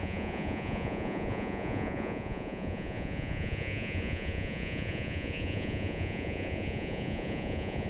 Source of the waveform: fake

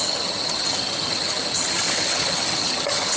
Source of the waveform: fake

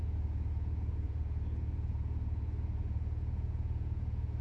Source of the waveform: fake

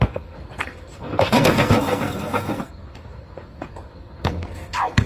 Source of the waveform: fake